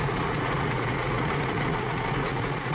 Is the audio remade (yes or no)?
yes